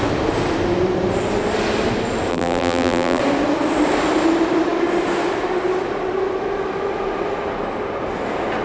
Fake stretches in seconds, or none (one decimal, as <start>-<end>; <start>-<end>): 2.3-3.2